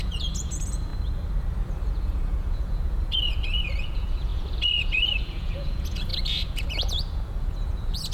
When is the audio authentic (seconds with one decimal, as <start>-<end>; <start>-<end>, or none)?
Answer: 0.9-1.9